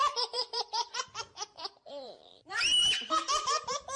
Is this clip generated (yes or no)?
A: yes